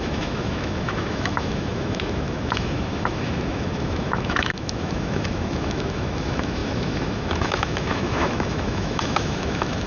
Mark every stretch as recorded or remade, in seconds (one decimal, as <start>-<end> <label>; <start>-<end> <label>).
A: 0.0-9.9 remade

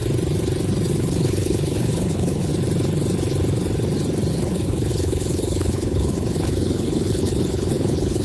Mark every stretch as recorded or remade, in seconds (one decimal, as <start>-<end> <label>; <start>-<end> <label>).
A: 0.0-0.9 recorded; 0.9-2.5 remade; 2.5-4.3 recorded; 4.3-8.2 remade

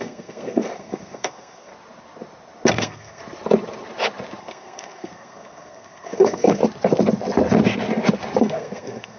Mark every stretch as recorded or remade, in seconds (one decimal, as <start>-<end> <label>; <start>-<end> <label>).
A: 0.0-1.7 remade; 1.7-2.7 recorded; 2.7-3.2 remade; 3.2-4.4 recorded; 4.4-6.6 remade; 6.6-8.4 recorded; 8.4-9.2 remade

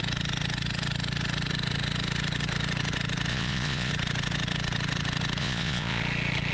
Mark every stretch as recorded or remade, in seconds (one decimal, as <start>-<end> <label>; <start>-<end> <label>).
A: 0.0-3.3 recorded; 3.3-3.9 remade; 3.9-5.4 recorded; 5.4-6.0 remade; 6.0-6.5 recorded

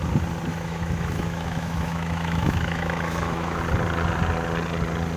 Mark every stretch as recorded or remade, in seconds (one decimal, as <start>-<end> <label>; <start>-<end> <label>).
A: 0.0-0.5 recorded; 0.5-3.6 remade; 3.6-5.2 recorded

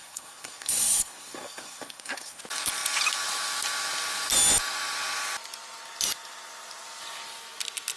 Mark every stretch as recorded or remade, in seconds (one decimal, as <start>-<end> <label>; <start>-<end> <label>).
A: 0.0-2.4 remade; 2.4-8.0 recorded

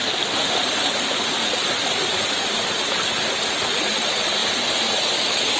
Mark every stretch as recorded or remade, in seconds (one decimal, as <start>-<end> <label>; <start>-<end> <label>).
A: 0.0-5.6 recorded

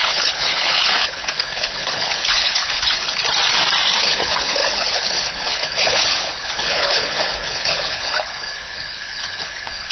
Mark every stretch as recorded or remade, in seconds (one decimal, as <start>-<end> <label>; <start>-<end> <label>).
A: 0.0-3.2 remade; 3.2-4.0 recorded; 4.0-9.9 remade